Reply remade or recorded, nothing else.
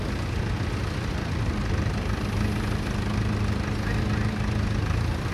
recorded